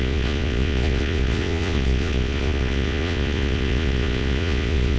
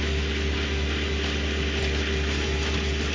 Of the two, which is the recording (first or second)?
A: second